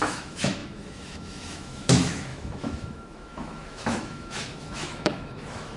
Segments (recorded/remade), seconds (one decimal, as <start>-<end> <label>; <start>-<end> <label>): 0.0-5.8 remade